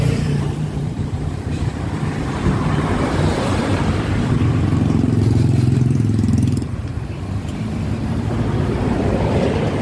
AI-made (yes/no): yes